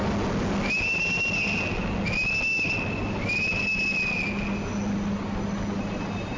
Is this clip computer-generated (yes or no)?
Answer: no